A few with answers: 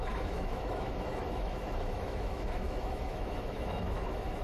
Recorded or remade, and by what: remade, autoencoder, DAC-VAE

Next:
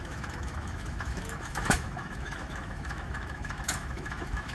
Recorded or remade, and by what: remade, autoencoder, DAC-VAE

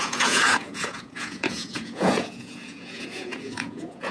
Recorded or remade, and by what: remade, vocoder, Vocos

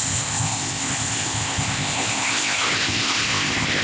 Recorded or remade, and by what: remade, codec, ZipCodec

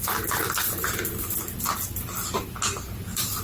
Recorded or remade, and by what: recorded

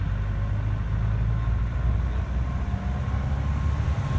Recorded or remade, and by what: recorded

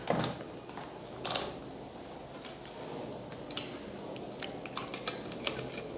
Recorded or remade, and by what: recorded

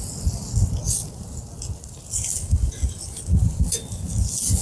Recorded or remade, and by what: recorded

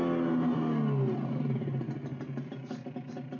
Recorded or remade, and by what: recorded